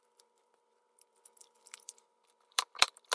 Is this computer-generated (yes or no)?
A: yes